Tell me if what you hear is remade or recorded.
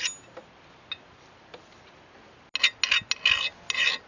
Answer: recorded